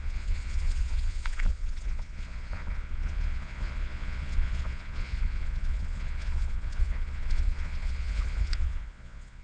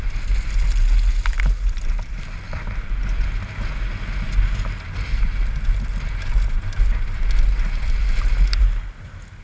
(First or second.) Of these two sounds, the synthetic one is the first